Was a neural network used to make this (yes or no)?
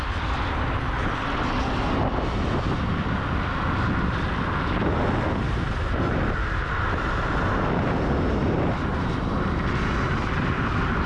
no